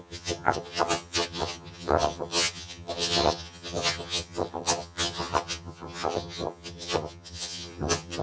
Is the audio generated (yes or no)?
yes